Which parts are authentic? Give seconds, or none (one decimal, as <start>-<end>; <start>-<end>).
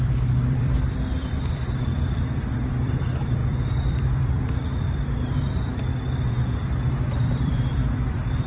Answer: none